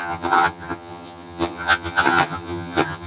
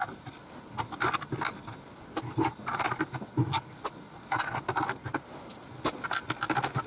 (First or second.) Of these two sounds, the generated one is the first